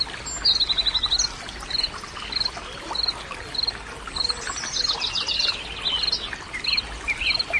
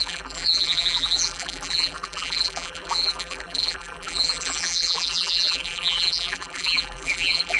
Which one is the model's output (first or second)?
second